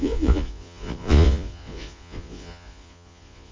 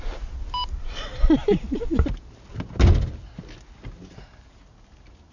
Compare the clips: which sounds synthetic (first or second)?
first